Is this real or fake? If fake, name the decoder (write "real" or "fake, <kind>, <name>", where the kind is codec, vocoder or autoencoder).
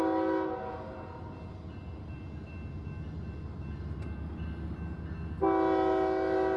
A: real